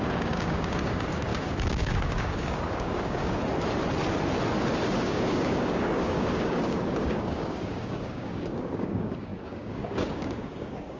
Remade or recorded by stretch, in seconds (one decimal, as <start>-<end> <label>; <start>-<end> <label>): 0.0-3.4 remade; 3.4-5.0 recorded; 5.0-11.0 remade